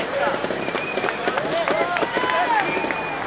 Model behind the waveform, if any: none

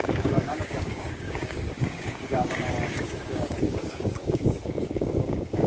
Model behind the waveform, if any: codec, DAC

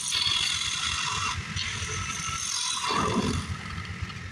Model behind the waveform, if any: none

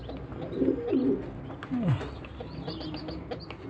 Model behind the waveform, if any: none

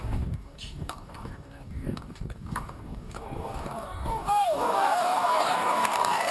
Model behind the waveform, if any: codec, DAC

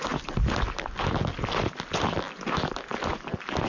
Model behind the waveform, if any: none